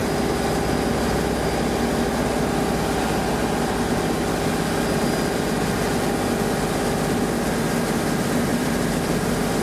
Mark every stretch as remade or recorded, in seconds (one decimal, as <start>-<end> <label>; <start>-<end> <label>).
0.0-8.5 recorded; 8.5-9.1 remade; 9.1-9.6 recorded